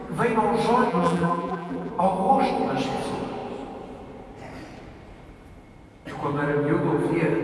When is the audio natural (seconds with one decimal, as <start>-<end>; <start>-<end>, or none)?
0.0-0.9; 1.9-7.4